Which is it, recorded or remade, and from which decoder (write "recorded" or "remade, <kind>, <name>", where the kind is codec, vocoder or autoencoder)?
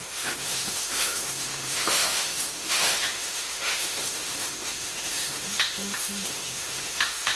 remade, autoencoder, DAC-VAE